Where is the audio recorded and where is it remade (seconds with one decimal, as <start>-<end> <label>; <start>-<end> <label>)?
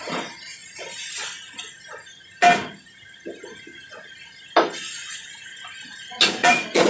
0.0-6.4 recorded; 6.4-6.9 remade